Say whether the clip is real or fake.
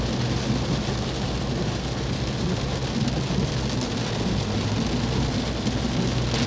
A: real